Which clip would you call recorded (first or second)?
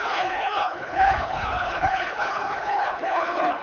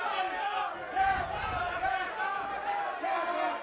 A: second